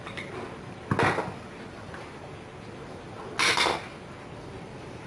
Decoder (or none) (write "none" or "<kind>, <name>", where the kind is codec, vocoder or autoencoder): none